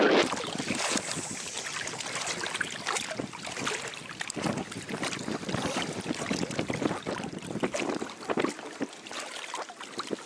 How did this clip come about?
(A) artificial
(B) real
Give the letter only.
B